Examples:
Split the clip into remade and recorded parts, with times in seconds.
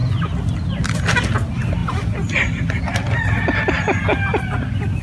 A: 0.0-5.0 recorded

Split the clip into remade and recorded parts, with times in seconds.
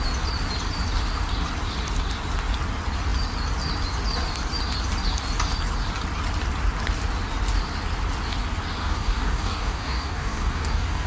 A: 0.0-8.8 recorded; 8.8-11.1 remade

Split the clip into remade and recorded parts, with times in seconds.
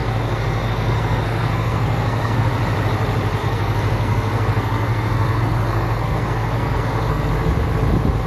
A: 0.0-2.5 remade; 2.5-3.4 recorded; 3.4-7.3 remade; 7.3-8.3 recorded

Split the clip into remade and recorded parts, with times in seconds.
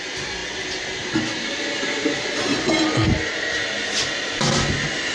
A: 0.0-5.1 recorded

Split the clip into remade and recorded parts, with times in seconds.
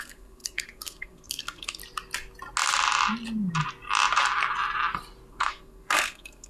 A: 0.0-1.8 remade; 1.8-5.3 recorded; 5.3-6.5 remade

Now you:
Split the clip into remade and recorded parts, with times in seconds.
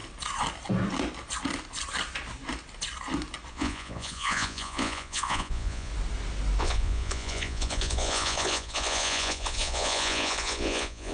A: 0.0-3.5 recorded; 3.5-5.9 remade; 5.9-6.6 recorded; 6.6-11.1 remade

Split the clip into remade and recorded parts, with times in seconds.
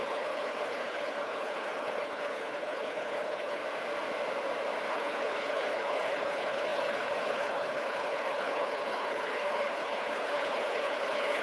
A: 0.0-3.6 remade; 3.6-4.9 recorded; 4.9-11.4 remade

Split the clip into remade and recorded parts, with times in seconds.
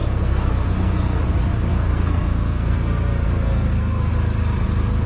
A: 0.0-1.2 remade; 1.2-1.7 recorded; 1.7-4.1 remade; 4.1-5.1 recorded